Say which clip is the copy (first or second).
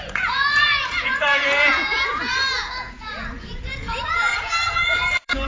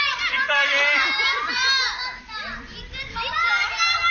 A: first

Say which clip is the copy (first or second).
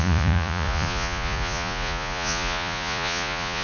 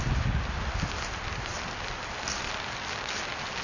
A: first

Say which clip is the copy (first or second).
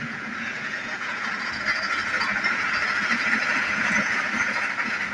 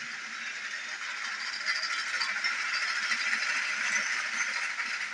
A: first